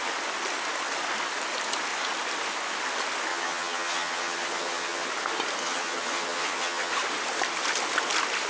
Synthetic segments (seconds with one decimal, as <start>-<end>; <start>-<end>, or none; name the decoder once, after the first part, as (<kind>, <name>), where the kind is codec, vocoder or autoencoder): 3.3-5.1 (vocoder, HiFi-GAN); 5.6-6.9